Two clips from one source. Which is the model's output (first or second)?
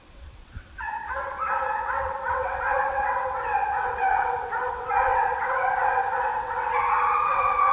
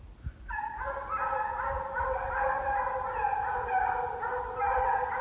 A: first